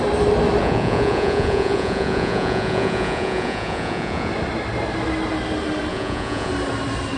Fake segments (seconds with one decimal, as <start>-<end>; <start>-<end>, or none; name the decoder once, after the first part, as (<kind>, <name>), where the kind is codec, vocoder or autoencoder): 0.6-4.3 (vocoder, Vocos); 5.9-6.5